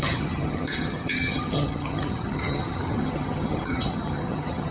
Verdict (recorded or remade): remade